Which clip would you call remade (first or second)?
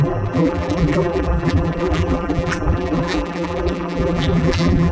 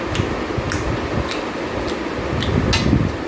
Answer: first